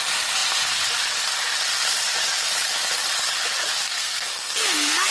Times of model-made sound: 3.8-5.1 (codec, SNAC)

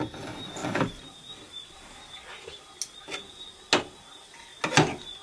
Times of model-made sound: none

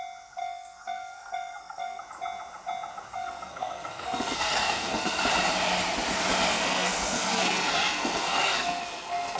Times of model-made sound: 0.4-2.0 (codec, SNAC); 3.1-5.2; 6.5-9.4